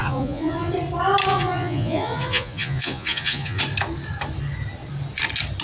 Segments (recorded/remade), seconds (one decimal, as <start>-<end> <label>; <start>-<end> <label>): 0.0-0.7 remade; 0.7-1.3 recorded; 1.3-3.6 remade; 3.6-5.6 recorded